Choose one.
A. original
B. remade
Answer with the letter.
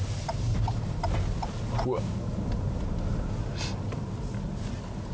A